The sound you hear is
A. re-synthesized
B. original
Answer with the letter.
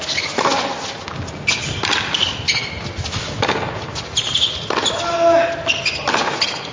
B